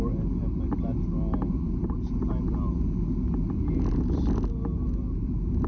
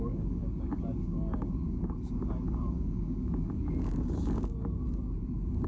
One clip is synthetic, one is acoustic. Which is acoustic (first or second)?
first